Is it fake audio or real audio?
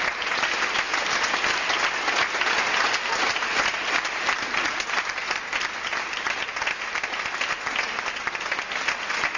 real